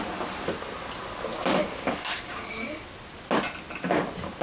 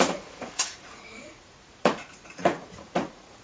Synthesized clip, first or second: second